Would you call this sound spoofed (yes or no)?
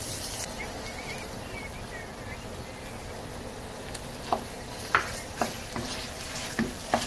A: no